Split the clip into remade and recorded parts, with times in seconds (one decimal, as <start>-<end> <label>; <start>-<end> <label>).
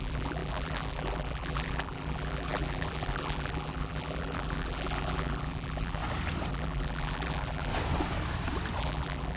0.0-6.0 remade; 6.0-6.5 recorded; 6.5-7.7 remade; 7.7-8.8 recorded; 8.8-9.4 remade